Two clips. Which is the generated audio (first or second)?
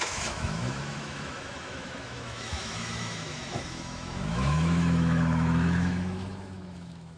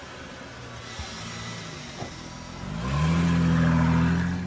first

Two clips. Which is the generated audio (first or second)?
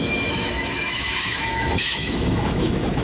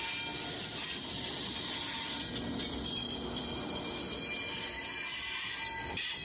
first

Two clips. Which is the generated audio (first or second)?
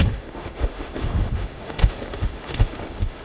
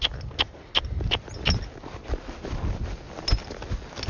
first